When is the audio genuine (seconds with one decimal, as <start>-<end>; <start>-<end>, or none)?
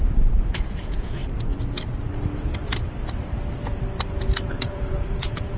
1.2-4.6